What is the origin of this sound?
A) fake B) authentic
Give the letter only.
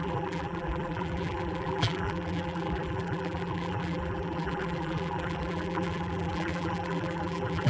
A